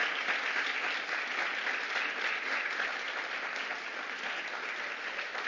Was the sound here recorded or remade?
recorded